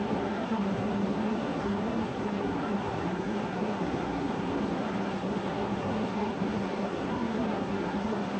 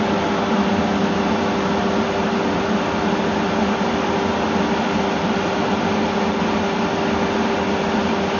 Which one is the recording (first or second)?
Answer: second